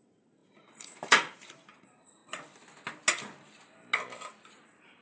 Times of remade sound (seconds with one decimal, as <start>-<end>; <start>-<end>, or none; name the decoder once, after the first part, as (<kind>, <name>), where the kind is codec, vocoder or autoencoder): 0.0-2.2 (vocoder, BigVGAN v2); 4.5-5.0